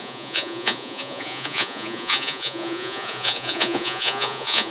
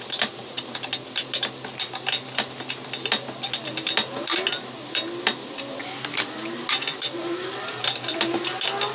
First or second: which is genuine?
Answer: second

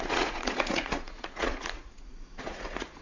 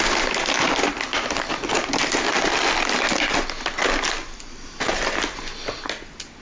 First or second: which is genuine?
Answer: second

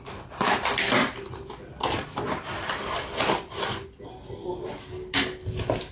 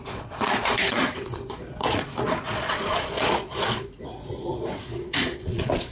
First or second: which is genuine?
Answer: first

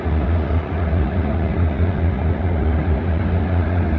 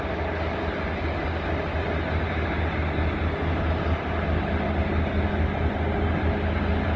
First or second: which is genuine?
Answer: second